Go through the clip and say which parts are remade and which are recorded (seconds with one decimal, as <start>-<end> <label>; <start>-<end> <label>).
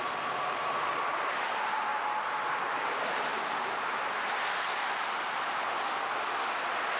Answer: 0.0-7.0 recorded